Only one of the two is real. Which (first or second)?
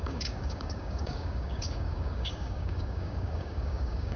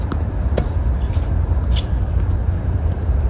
second